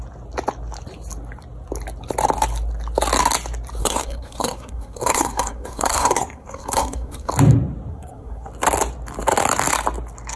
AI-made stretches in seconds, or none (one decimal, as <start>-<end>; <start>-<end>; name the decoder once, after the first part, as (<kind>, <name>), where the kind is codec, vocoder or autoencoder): 3.8-7.3 (codec, SNAC); 7.9-8.5